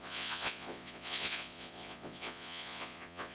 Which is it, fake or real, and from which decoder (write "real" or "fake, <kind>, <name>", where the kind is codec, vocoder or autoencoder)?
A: fake, vocoder, Vocos